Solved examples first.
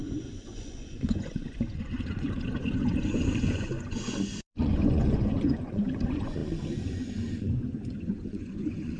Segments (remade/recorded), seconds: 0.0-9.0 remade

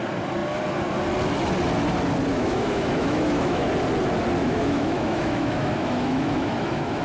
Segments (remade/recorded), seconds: 0.0-2.3 recorded; 2.3-3.7 remade; 3.7-4.4 recorded; 4.4-7.0 remade

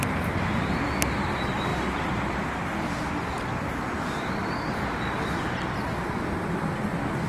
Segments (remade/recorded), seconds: 0.0-7.3 recorded

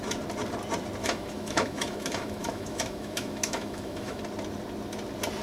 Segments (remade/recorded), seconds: 0.0-1.0 recorded; 1.0-4.2 remade; 4.2-5.4 recorded

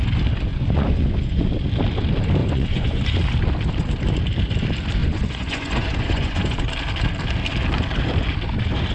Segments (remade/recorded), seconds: 0.0-0.5 recorded; 0.5-1.4 remade; 1.4-2.4 recorded; 2.4-3.0 remade; 3.0-5.0 recorded; 5.0-6.7 remade; 6.7-8.9 recorded

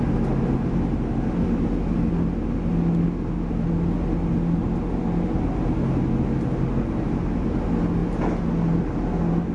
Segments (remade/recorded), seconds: 0.0-9.5 recorded

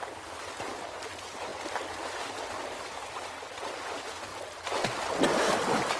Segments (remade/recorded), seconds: 0.0-6.0 recorded